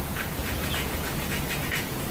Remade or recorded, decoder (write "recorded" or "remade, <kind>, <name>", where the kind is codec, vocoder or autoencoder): remade, vocoder, Vocos